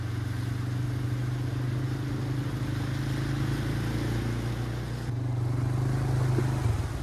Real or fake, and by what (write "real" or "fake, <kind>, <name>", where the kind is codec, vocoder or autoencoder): real